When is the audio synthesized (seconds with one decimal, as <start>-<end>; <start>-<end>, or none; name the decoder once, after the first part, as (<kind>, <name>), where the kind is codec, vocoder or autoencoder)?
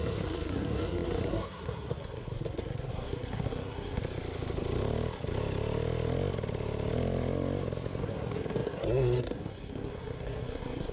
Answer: 0.0-4.0 (codec, SNAC); 8.0-10.9